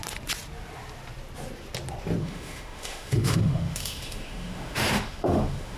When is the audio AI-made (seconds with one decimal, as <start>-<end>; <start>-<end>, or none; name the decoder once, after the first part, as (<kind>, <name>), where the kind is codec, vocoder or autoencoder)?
2.2-5.8 (autoencoder, DAC-VAE)